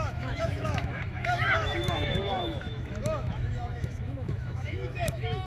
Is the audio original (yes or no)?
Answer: no